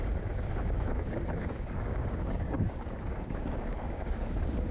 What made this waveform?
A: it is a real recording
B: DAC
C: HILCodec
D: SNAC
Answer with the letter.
B